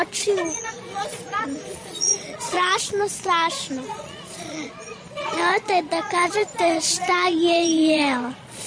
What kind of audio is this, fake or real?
fake